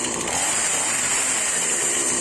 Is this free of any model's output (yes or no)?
no